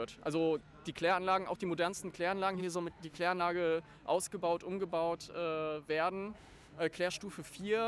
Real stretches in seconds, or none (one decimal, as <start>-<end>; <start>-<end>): 0.0-2.6; 3.4-6.3; 7.1-7.9